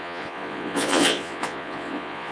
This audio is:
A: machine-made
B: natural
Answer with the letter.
A